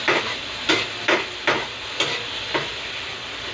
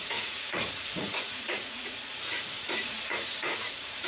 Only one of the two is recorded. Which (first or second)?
first